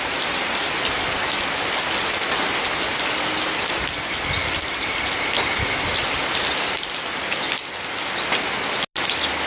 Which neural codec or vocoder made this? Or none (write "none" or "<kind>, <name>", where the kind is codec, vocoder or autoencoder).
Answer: none